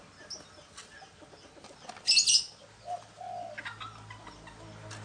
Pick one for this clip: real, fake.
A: real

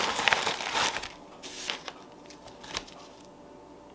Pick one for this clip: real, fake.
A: real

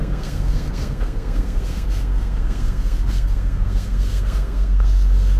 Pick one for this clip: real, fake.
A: fake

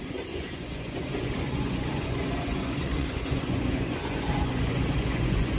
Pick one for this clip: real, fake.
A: fake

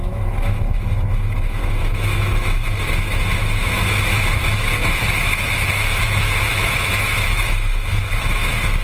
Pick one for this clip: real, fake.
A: fake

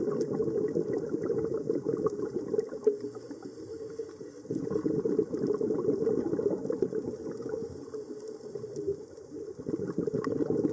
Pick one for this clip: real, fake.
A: real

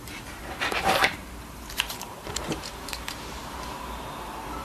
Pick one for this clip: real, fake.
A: fake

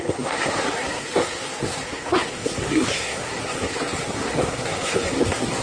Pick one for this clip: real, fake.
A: fake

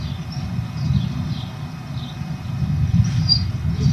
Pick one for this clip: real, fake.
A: real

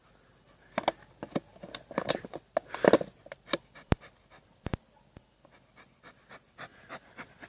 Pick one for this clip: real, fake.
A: real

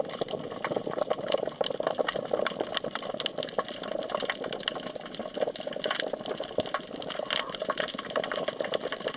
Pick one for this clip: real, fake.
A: real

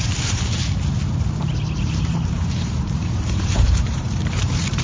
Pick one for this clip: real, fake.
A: fake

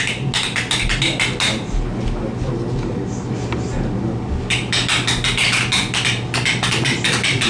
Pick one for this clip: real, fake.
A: real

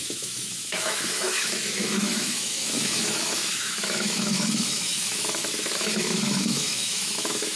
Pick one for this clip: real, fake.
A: fake